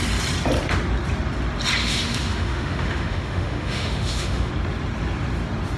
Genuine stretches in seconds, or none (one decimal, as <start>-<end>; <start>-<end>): 0.0-1.8; 4.5-5.8